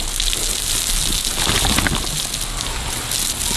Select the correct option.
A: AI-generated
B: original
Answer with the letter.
B